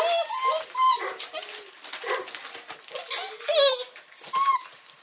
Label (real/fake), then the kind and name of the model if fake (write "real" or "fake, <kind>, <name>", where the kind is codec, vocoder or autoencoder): real